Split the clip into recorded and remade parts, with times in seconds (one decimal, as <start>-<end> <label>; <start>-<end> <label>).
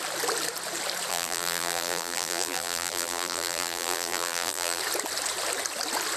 0.0-1.1 recorded; 1.1-4.8 remade; 4.8-6.2 recorded